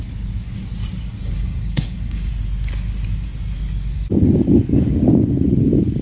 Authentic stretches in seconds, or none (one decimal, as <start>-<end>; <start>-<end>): 0.0-1.2; 2.3-6.0